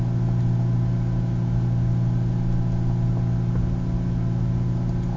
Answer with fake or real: real